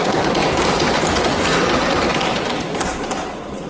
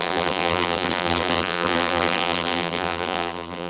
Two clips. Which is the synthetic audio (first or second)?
second